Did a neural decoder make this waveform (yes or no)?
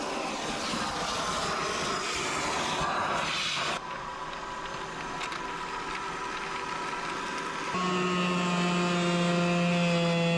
no